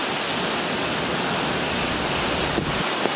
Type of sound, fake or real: real